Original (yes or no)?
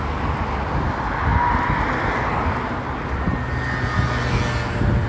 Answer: yes